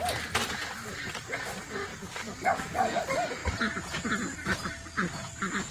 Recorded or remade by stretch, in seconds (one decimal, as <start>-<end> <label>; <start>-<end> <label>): 0.0-1.9 recorded; 1.9-3.0 remade; 3.0-5.7 recorded